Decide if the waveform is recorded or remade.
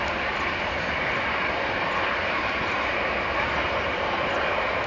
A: recorded